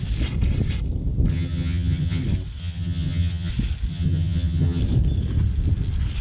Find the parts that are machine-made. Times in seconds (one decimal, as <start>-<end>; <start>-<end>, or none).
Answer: 1.3-2.2; 2.6-3.5; 3.9-4.8

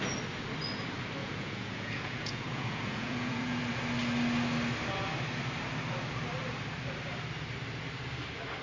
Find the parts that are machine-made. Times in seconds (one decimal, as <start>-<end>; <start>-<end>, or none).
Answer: 1.2-3.6

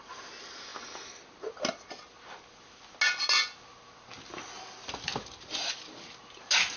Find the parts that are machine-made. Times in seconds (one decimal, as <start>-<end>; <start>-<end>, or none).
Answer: none

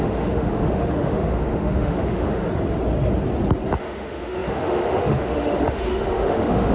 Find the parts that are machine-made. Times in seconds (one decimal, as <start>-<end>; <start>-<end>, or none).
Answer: 0.0-2.4; 3.8-6.7

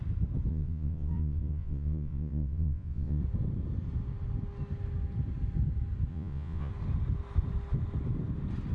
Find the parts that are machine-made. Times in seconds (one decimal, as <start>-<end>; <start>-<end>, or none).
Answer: 0.5-3.2; 6.1-6.7

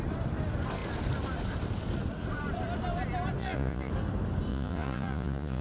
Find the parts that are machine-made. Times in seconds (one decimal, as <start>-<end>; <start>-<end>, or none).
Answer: 3.4-3.9; 4.5-5.6